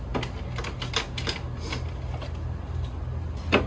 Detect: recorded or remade recorded